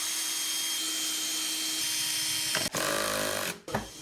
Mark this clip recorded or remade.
recorded